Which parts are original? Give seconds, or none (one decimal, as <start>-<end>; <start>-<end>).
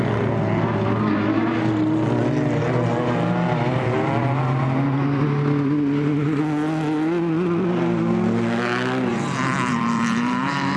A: 0.0-9.1